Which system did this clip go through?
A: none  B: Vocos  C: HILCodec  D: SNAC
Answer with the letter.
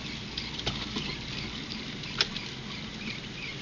A